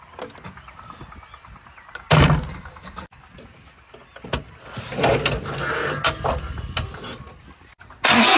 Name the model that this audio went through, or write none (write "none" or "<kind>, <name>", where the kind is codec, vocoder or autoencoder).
none